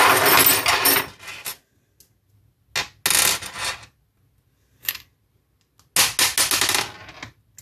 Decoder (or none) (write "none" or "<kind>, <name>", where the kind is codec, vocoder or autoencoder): none